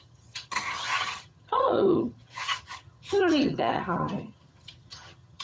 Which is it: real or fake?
fake